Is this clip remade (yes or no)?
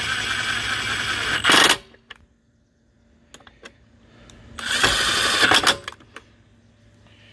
no